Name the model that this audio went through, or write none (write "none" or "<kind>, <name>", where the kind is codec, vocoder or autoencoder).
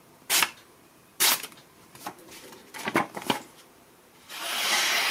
vocoder, BigVGAN v2